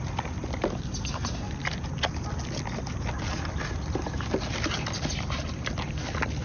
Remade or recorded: recorded